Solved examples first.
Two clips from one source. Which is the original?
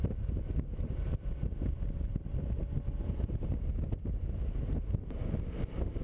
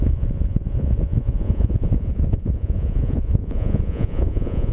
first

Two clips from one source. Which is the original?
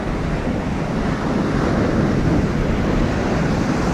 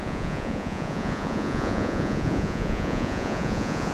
first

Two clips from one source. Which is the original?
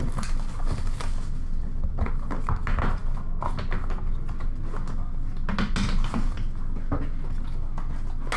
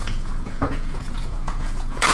first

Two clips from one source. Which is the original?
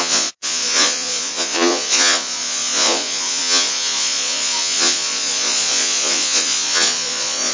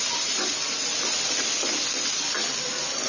second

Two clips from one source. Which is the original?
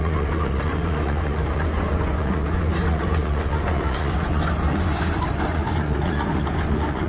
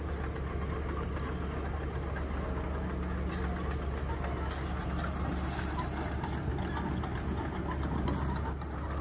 second